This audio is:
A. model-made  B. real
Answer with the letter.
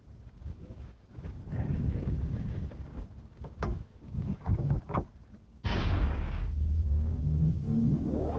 A